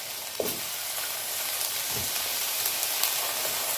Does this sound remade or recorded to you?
recorded